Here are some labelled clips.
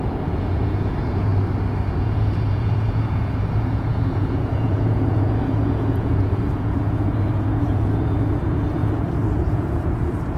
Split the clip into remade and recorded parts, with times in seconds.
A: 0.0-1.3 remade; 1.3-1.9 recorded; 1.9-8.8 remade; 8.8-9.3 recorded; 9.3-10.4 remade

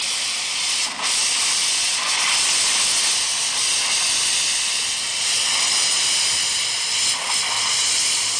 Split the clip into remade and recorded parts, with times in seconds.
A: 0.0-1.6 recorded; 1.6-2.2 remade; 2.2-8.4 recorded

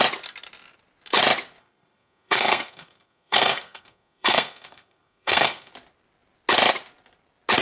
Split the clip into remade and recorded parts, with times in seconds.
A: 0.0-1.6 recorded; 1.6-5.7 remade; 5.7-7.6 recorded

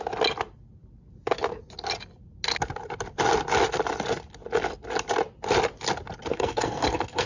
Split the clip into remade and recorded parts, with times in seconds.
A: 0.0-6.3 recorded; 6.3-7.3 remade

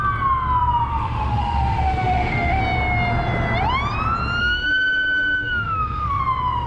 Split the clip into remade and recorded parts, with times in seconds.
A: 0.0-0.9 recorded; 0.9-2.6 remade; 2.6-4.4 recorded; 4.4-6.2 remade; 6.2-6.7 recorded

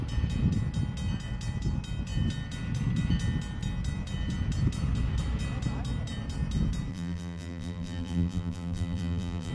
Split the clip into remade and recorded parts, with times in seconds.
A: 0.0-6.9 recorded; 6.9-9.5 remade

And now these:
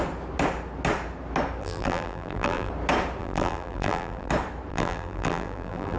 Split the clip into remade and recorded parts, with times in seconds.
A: 0.0-1.6 recorded; 1.6-2.7 remade; 2.7-3.2 recorded; 3.2-4.3 remade; 4.3-4.7 recorded; 4.7-6.0 remade

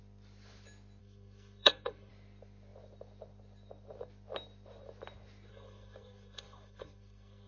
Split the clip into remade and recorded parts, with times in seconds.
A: 0.0-1.0 recorded; 1.0-2.1 remade; 2.1-5.5 recorded; 5.5-7.5 remade